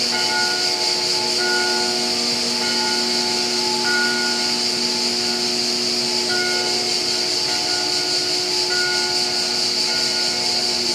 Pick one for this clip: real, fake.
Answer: real